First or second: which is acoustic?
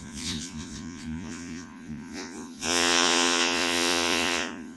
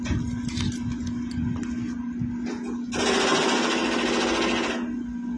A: second